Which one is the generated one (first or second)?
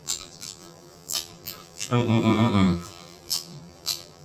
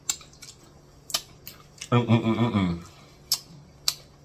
first